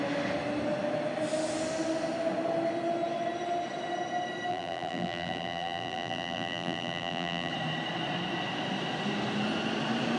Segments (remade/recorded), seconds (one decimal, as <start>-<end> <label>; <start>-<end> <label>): 0.0-4.5 recorded; 4.5-7.5 remade; 7.5-10.2 recorded